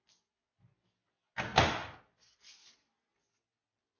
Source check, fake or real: real